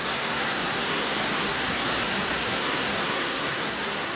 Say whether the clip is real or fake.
fake